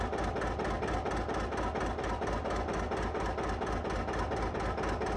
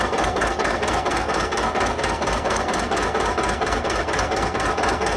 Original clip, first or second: first